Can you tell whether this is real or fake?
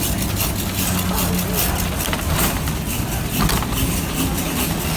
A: real